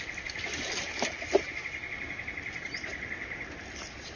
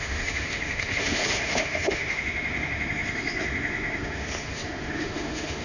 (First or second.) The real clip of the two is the first